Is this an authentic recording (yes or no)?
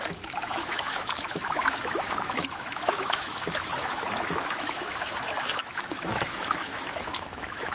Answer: no